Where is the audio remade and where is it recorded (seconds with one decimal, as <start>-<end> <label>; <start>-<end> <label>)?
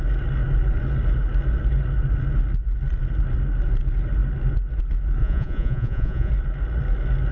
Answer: 0.0-5.2 recorded; 5.2-6.3 remade; 6.3-7.3 recorded